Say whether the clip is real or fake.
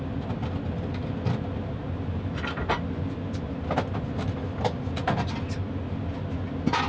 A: real